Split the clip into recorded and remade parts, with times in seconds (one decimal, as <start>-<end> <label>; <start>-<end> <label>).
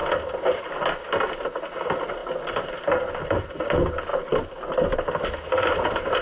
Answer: 0.0-6.2 recorded